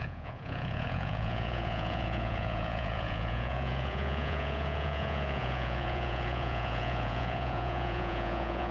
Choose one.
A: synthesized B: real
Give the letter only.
A